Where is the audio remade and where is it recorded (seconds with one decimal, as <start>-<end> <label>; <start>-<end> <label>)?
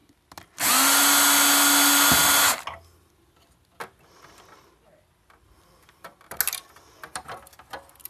0.0-8.1 recorded